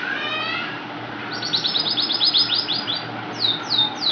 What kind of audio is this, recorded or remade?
recorded